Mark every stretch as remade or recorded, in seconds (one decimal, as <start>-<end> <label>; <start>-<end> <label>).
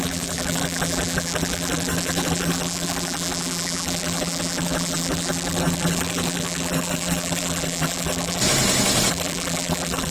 0.0-8.4 remade; 8.4-9.1 recorded; 9.1-10.1 remade